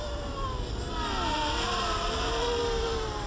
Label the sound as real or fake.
real